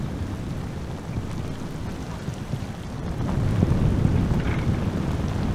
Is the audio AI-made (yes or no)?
no